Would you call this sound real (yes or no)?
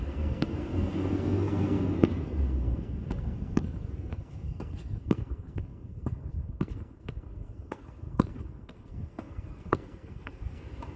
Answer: no